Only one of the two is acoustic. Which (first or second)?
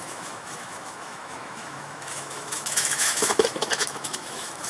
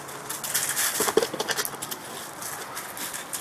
second